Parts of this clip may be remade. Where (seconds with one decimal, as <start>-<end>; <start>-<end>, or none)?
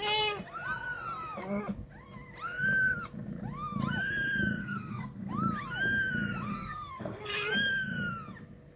4.6-5.3; 6.5-7.3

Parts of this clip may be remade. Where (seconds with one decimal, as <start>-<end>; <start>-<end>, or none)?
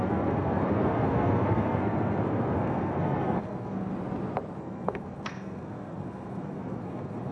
0.0-3.9; 4.6-7.3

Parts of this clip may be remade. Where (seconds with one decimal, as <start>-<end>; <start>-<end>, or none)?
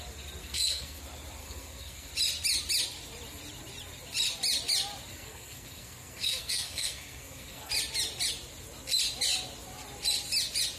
0.4-1.0; 1.4-2.1; 5.1-7.7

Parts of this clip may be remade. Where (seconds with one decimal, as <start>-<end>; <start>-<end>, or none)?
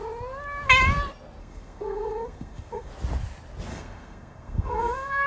1.4-2.9; 3.7-5.3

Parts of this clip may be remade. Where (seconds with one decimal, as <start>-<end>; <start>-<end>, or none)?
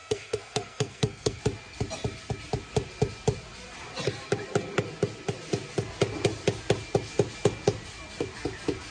0.0-1.4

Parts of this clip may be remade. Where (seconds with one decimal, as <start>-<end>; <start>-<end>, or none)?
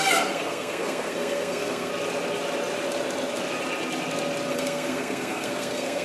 0.0-1.9; 4.5-6.0